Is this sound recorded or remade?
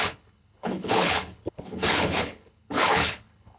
remade